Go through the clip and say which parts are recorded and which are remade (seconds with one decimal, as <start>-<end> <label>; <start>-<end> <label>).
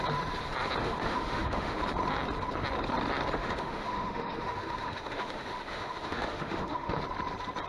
0.0-0.8 recorded; 0.8-1.8 remade; 1.8-3.4 recorded; 3.4-7.0 remade; 7.0-7.7 recorded